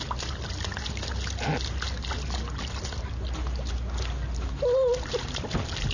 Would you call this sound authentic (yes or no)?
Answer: yes